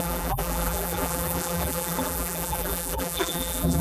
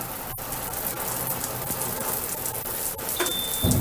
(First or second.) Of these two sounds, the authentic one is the second